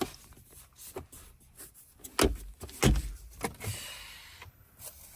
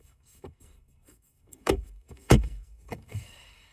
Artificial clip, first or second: second